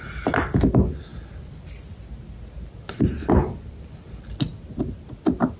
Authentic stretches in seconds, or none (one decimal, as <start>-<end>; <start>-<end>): 0.0-5.6